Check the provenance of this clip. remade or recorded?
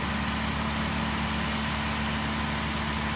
recorded